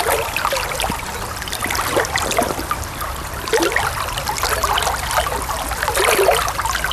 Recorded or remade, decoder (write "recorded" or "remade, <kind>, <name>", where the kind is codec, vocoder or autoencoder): recorded